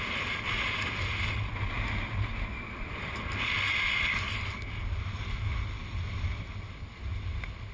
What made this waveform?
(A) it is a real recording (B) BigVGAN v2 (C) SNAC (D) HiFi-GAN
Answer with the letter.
A